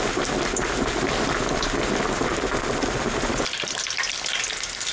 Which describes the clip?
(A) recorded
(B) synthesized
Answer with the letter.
A